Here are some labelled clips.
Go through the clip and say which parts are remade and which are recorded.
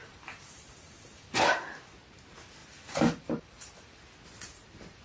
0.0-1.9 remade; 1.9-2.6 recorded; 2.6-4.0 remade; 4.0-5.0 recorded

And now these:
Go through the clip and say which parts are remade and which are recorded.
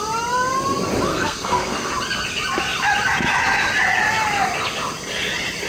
0.0-1.1 recorded; 1.1-1.9 remade; 1.9-5.7 recorded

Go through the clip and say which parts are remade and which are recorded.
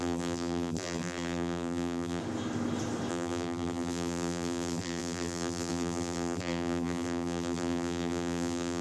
0.0-2.2 remade; 2.2-3.1 recorded; 3.1-8.8 remade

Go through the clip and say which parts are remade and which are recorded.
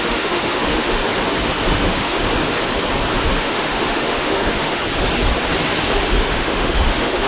0.0-1.0 remade; 1.0-1.7 recorded; 1.7-2.2 remade; 2.2-3.3 recorded; 3.3-4.8 remade; 4.8-6.1 recorded; 6.1-7.3 remade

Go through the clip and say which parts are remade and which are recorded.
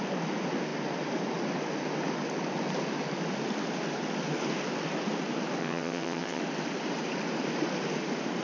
0.0-5.6 recorded; 5.6-6.4 remade; 6.4-8.4 recorded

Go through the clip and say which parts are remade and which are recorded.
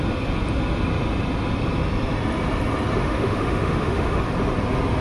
0.0-3.0 recorded; 3.0-4.2 remade; 4.2-5.0 recorded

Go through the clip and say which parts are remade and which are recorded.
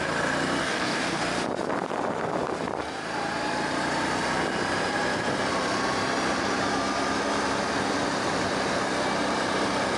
0.0-0.6 recorded; 0.6-1.2 remade; 1.2-10.0 recorded